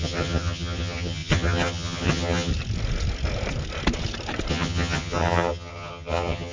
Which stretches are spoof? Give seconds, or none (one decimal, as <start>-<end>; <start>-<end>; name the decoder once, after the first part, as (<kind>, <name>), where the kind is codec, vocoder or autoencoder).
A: 0.0-2.5 (vocoder, HiFi-GAN); 4.5-6.5